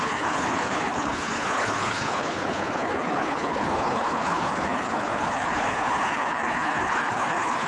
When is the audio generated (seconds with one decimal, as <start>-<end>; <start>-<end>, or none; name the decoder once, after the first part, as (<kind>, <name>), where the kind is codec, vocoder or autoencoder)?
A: 0.0-7.7 (codec, HILCodec)